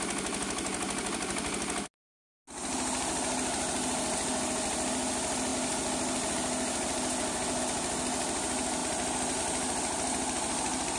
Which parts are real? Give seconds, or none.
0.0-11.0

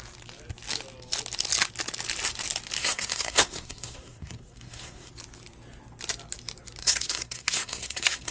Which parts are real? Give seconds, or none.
0.0-2.8; 5.1-6.8

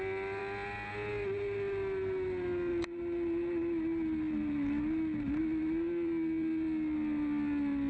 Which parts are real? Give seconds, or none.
0.0-2.7; 5.4-7.9

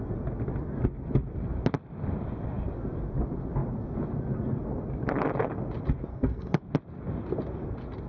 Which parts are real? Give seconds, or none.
0.0-6.1; 6.6-8.1